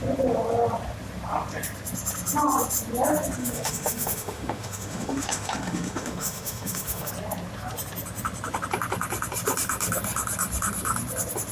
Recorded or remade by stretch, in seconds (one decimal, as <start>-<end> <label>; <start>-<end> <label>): 0.0-3.4 recorded; 3.4-7.1 remade; 7.1-11.5 recorded